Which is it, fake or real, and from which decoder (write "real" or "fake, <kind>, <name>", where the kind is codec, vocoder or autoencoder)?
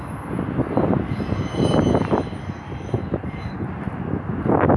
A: real